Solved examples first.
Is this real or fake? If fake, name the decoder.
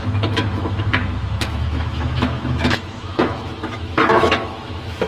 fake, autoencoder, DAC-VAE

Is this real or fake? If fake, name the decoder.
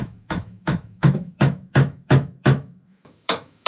fake, autoencoder, DAC-VAE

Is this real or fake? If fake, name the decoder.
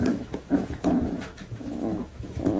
fake, autoencoder, DAC-VAE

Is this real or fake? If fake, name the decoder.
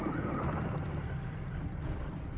real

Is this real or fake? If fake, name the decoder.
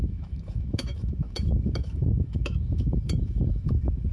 fake, autoencoder, DAC-VAE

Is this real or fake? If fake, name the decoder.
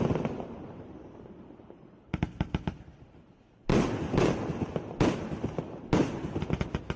real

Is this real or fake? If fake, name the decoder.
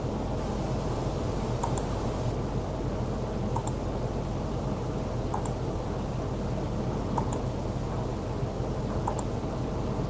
real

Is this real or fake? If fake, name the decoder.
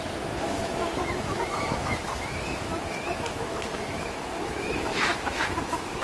fake, autoencoder, DAC-VAE